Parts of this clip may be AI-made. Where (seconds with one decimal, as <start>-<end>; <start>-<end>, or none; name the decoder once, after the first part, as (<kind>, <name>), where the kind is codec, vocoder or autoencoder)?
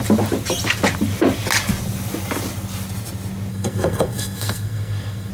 3.5-5.3 (codec, SNAC)